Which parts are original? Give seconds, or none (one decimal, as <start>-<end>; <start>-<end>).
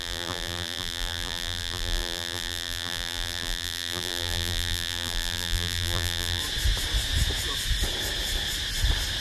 6.4-9.2